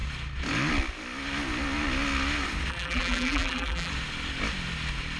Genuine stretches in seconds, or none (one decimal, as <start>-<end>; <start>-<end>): 0.0-2.7; 3.9-5.2